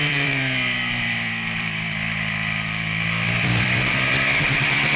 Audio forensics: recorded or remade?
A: remade